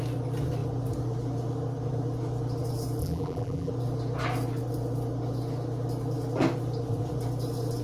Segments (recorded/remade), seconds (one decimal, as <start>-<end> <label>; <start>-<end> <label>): 0.0-3.0 recorded; 3.0-3.7 remade; 3.7-7.8 recorded